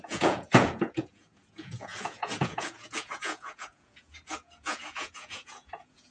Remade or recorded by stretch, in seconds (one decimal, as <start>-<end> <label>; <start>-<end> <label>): 0.0-6.1 remade